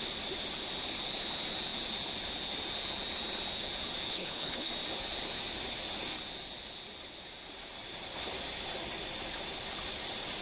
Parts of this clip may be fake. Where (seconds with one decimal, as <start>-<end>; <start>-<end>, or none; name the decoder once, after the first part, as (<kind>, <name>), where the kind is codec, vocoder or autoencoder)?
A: 4.1-4.7 (codec, HILCodec)